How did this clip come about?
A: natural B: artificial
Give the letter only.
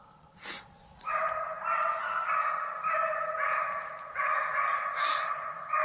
A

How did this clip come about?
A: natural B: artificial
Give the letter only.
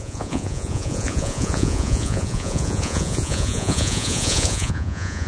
B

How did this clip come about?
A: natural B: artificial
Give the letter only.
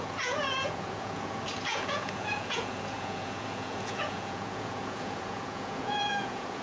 B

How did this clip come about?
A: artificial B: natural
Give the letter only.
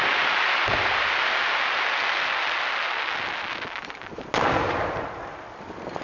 B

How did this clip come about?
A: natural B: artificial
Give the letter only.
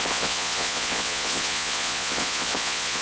B